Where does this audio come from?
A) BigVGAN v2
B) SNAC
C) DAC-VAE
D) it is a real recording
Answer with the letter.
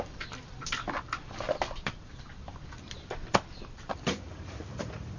A